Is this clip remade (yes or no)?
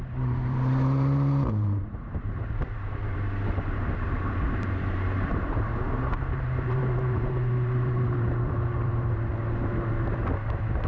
yes